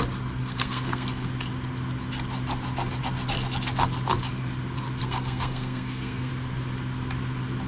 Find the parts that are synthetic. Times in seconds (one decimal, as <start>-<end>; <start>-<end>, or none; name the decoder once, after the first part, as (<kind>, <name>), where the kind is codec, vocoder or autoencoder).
0.4-1.3 (codec, SNAC); 5.0-6.3